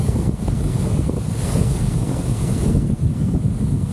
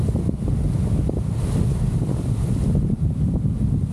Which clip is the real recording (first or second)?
second